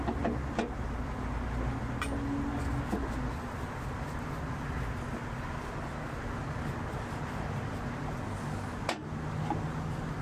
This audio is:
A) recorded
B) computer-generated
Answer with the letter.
A